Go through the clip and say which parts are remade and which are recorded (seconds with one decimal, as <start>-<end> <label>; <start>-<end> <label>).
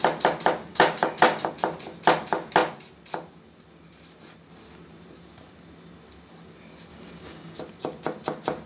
0.0-0.7 recorded; 0.7-1.5 remade; 1.5-6.9 recorded; 6.9-7.6 remade; 7.6-8.7 recorded